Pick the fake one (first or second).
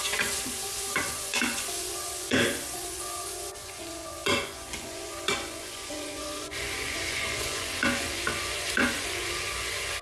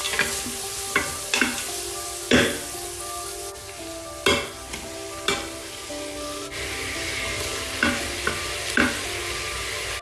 first